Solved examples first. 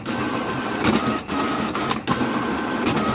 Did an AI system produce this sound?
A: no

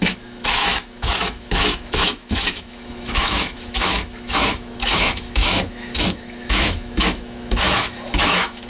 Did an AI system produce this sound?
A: yes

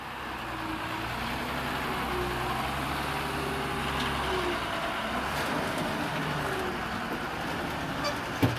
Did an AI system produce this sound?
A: no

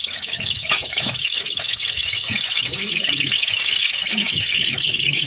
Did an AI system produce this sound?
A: yes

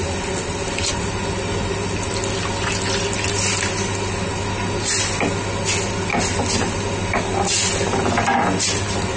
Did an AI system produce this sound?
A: no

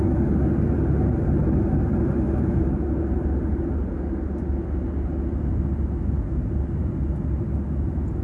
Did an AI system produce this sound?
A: no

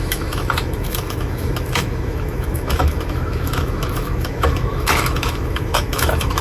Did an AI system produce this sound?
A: yes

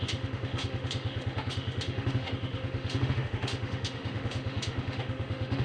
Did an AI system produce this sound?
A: yes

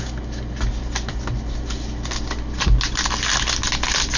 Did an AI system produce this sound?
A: no